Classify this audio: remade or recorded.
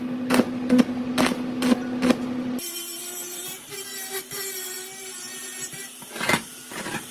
recorded